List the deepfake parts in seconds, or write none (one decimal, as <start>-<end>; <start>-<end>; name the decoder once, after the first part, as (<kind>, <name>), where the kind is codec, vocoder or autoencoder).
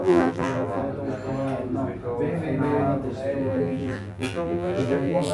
0.0-0.8 (vocoder, BigVGAN v2); 3.4-5.3